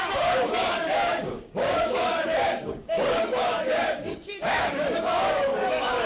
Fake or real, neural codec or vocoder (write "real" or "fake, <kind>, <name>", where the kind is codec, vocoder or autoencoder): fake, codec, DAC